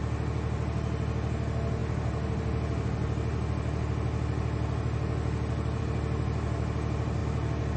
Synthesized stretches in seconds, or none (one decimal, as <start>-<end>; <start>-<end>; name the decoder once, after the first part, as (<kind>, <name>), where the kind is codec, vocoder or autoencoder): none